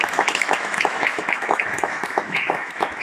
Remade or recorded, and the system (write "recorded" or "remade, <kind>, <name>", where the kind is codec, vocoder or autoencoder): remade, autoencoder, DAC-VAE